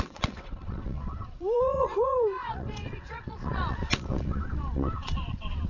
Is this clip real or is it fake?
fake